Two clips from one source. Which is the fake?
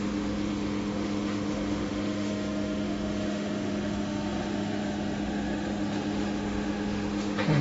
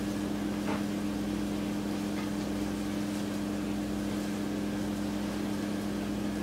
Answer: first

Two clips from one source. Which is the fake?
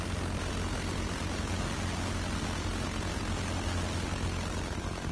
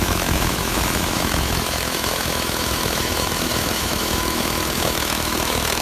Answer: second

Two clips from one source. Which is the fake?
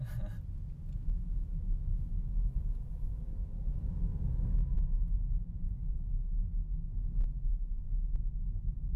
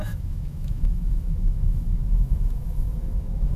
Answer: second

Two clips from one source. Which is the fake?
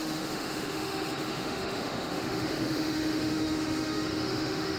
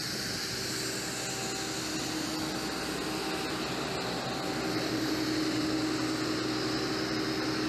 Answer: first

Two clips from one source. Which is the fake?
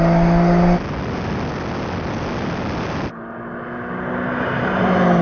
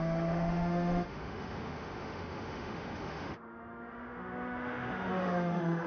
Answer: second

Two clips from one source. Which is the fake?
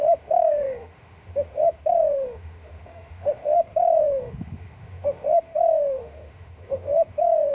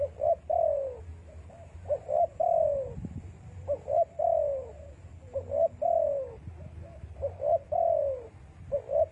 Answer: first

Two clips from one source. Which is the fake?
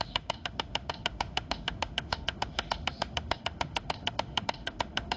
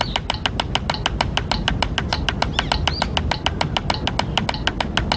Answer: first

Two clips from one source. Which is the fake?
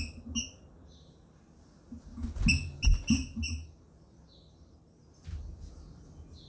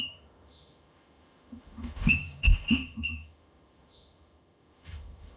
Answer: second